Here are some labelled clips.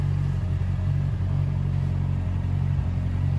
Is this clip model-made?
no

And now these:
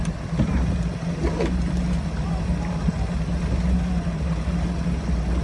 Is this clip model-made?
no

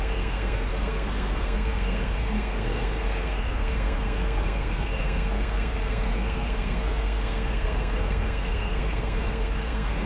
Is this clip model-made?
yes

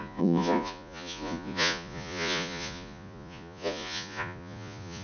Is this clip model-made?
yes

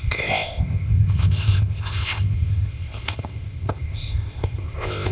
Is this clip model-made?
yes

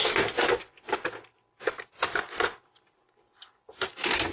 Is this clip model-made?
no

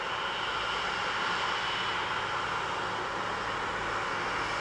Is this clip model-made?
no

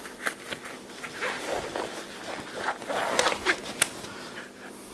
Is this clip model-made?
no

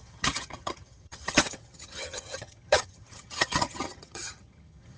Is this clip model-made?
yes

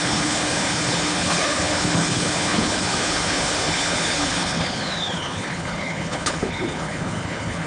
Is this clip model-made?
yes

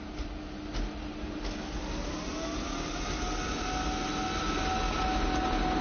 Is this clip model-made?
no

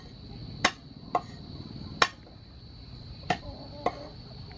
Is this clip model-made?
no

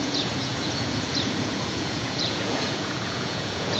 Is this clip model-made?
yes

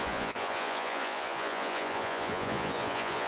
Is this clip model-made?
yes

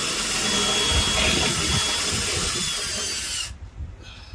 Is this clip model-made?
no